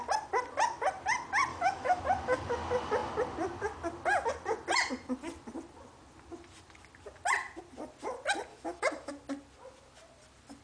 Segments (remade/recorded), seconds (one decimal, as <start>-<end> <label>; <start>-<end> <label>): 0.0-1.5 recorded; 1.5-2.0 remade; 2.0-8.5 recorded; 8.5-9.1 remade; 9.1-10.6 recorded